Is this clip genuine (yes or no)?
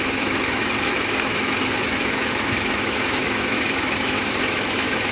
no